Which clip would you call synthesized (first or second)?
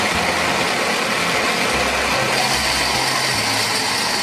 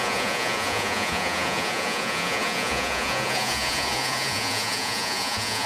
second